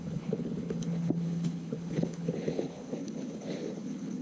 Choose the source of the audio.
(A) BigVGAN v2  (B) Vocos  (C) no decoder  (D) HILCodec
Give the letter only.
D